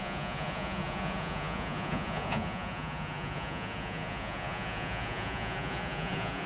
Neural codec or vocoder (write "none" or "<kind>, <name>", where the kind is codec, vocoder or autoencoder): vocoder, Vocos